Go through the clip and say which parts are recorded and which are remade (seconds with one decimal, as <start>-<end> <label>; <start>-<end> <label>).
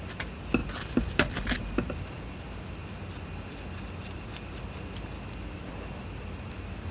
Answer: 0.0-6.9 recorded